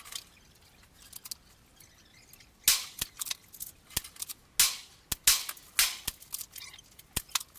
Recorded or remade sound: recorded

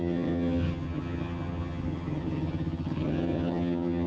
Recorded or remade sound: remade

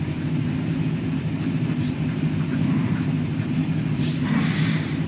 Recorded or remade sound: remade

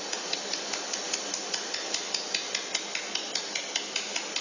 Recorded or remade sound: recorded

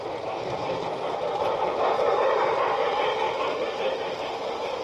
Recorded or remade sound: remade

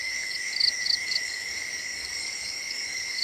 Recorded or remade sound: remade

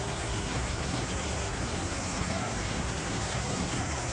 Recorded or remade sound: remade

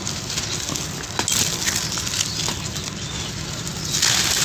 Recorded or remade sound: recorded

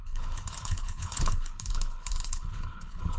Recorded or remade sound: remade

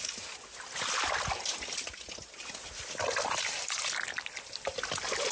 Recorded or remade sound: recorded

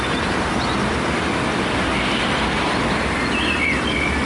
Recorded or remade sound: recorded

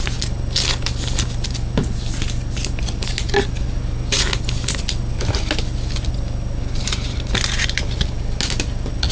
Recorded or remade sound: recorded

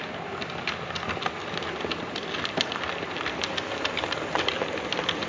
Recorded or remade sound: recorded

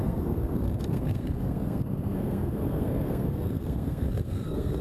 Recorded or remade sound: remade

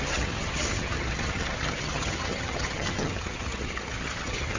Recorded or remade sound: remade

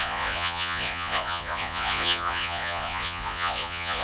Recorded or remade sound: remade